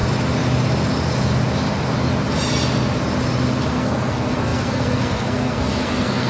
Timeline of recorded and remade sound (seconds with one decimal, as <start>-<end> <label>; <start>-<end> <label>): 0.0-3.7 recorded; 3.7-6.3 remade